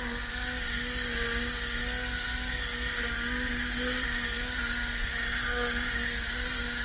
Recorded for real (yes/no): yes